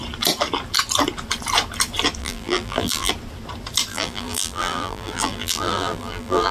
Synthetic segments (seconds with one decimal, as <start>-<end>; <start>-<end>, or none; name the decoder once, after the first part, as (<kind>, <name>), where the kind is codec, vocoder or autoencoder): 2.2-3.1 (vocoder, BigVGAN v2); 3.9-6.5